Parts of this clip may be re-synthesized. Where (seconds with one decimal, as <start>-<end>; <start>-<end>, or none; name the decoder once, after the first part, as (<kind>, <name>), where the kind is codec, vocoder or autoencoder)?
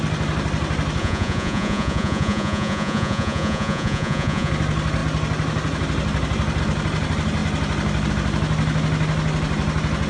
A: 1.0-4.5 (vocoder, Vocos)